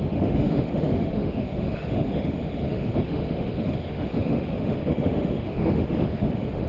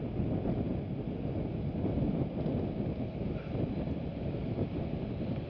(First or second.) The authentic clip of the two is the second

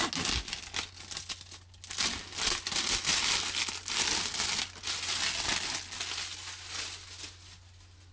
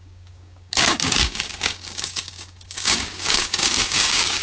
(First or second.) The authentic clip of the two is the first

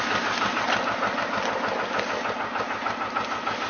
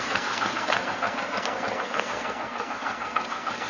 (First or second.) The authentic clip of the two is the first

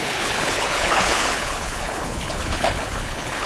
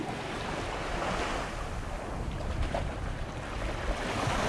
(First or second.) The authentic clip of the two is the second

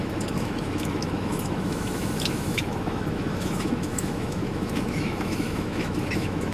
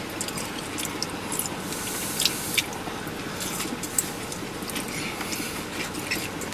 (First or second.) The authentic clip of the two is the second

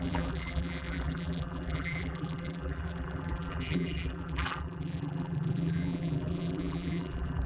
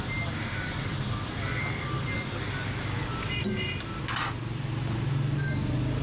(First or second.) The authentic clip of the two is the second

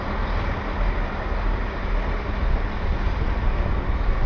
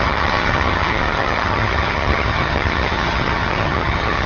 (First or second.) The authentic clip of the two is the first